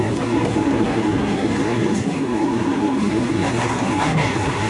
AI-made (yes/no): yes